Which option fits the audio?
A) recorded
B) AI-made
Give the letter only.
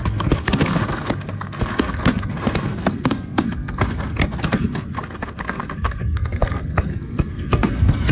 B